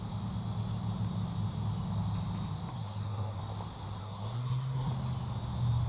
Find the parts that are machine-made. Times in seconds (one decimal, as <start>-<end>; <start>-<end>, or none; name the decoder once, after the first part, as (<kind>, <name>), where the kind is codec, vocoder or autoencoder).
2.7-3.4 (codec, SNAC); 4.0-4.9